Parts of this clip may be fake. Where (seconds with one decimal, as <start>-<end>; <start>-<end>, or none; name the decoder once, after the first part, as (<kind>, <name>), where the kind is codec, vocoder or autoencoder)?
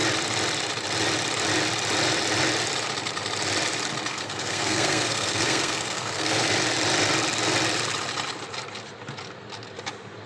4.1-6.5 (codec, SNAC)